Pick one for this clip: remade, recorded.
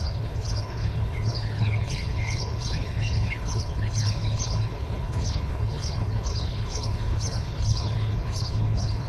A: remade